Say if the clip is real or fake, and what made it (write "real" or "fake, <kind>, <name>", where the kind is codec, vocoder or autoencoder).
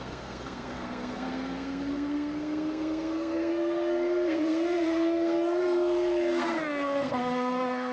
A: fake, codec, SNAC